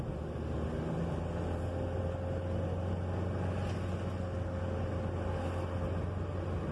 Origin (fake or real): real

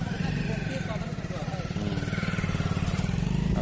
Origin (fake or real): real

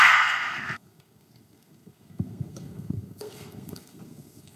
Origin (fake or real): fake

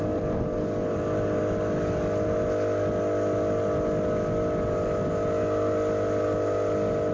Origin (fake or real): real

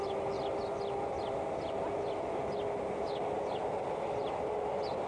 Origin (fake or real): real